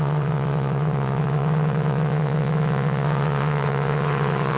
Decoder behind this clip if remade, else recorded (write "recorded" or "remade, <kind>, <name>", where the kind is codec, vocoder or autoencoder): remade, vocoder, WaveNeXt